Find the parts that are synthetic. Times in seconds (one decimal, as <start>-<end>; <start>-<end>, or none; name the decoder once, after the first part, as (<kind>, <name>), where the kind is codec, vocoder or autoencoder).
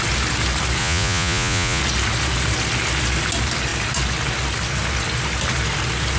0.8-1.8 (vocoder, Vocos)